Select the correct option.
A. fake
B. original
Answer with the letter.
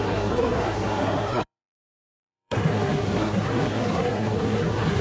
A